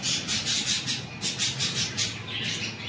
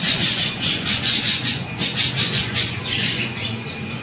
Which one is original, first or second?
first